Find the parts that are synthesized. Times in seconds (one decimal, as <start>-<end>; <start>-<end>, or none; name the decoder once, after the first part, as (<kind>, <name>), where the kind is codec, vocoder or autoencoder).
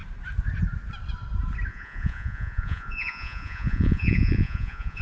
1.7-5.0 (vocoder, Vocos)